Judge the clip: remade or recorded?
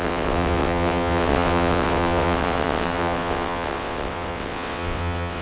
remade